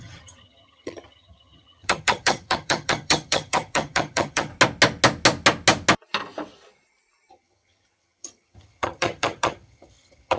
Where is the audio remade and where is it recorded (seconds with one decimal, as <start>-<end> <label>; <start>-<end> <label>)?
0.0-4.5 remade; 4.5-7.3 recorded; 7.3-10.4 remade